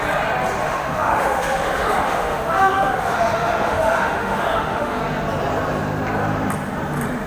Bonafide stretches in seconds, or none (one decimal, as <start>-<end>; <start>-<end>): 0.0-0.6; 5.0-7.3